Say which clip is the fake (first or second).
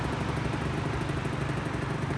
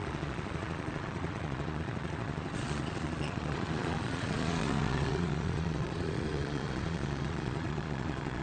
second